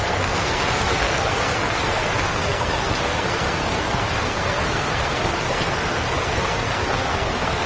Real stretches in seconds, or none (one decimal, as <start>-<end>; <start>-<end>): none